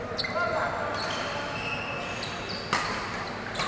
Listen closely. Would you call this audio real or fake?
real